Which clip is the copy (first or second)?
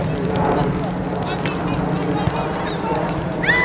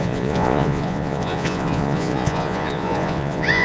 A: second